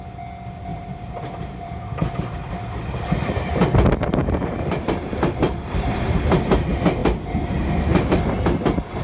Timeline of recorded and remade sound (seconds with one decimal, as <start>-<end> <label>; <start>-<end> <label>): 0.0-0.7 recorded; 0.7-3.5 remade; 3.5-4.2 recorded; 4.2-6.2 remade; 6.2-9.0 recorded